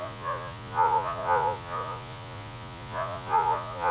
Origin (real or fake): fake